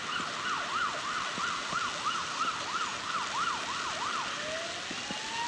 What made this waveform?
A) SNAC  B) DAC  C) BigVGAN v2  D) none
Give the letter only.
D